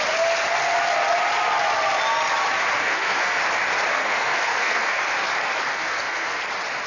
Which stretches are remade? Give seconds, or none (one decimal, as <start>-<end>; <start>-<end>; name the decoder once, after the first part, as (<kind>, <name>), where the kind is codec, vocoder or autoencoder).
2.8-3.4 (codec, SNAC); 3.9-5.0; 5.7-6.4